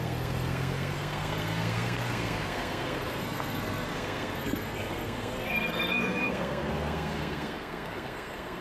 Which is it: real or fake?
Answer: fake